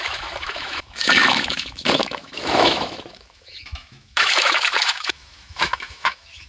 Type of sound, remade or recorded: remade